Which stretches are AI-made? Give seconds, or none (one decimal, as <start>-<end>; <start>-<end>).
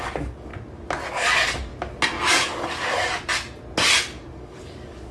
0.0-0.5; 1.1-1.7; 2.3-3.1; 4.3-5.1